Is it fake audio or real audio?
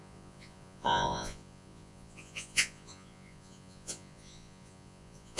fake